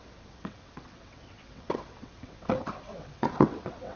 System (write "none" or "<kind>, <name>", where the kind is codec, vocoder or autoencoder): vocoder, WaveNeXt